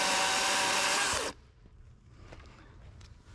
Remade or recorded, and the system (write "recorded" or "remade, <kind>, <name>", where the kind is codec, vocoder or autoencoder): recorded